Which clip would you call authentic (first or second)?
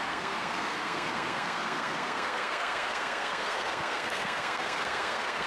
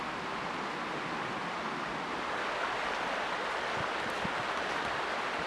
second